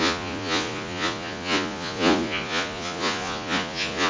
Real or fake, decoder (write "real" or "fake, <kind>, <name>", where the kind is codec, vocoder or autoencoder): fake, vocoder, Vocos